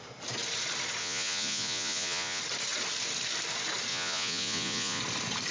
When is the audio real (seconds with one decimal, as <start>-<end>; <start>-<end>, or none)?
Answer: 0.0-1.0; 2.4-3.9; 5.0-5.5